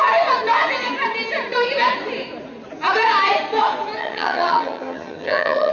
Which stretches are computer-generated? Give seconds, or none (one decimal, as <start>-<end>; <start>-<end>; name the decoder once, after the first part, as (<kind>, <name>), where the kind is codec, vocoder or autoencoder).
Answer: 4.0-5.7 (vocoder, HiFi-GAN)